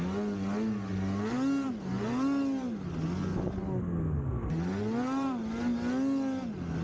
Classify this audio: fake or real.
real